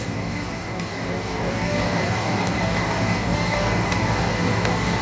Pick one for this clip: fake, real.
fake